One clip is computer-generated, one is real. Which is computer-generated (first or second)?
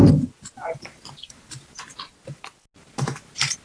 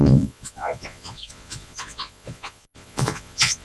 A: second